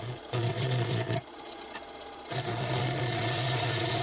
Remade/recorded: remade